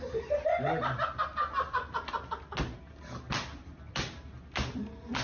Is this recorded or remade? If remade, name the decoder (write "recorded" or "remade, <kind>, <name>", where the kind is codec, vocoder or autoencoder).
recorded